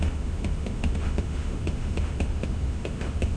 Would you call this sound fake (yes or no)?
yes